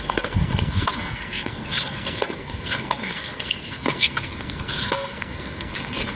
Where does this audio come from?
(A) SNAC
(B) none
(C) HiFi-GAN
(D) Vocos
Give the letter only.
A